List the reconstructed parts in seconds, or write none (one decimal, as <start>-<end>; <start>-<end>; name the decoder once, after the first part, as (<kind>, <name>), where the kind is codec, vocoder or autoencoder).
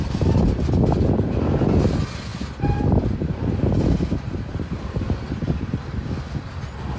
none